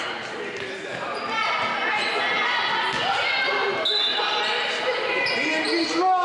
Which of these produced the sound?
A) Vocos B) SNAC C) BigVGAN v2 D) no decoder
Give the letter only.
D